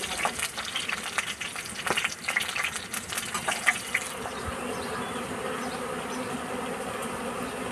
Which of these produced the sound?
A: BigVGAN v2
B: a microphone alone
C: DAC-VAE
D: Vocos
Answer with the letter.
B